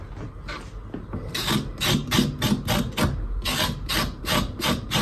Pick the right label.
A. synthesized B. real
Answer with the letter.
B